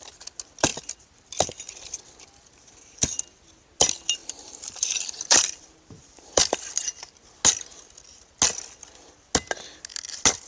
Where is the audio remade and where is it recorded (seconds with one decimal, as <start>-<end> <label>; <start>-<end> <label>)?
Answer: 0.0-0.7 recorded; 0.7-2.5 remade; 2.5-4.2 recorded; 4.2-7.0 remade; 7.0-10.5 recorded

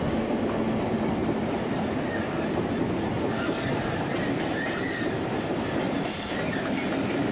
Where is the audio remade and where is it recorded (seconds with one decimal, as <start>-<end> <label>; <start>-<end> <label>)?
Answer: 0.0-1.2 recorded; 1.2-2.7 remade; 2.7-7.3 recorded

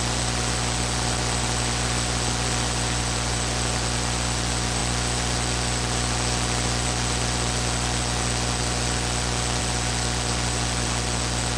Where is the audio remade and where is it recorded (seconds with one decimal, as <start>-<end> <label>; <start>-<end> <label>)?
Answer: 0.0-11.6 recorded

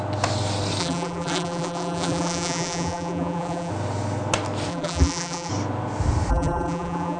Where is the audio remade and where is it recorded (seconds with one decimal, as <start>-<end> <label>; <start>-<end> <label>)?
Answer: 0.0-0.8 recorded; 0.8-3.7 remade; 3.7-4.7 recorded; 4.7-5.5 remade; 5.5-6.3 recorded; 6.3-7.2 remade

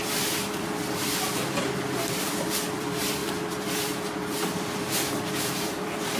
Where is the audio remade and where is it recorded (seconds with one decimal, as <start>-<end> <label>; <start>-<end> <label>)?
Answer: 0.0-6.2 remade